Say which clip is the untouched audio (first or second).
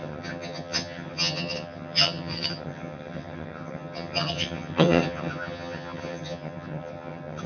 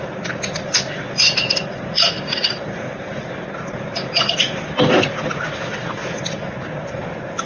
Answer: second